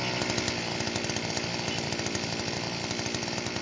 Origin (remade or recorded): recorded